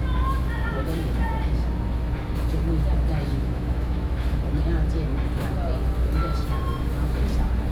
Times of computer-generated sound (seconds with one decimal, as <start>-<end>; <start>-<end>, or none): 3.3-4.4